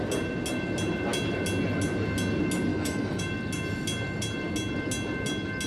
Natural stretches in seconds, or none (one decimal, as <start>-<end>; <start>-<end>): 0.0-2.7; 3.2-5.7